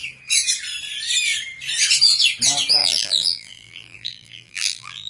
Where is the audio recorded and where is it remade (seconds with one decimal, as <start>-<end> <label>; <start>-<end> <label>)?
0.0-2.8 recorded; 2.8-5.1 remade